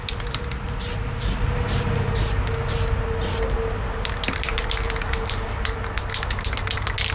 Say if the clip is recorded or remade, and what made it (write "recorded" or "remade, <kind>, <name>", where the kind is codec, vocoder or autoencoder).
recorded